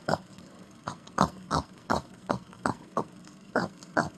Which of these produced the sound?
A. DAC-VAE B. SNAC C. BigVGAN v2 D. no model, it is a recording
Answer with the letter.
B